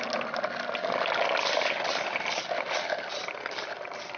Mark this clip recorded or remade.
recorded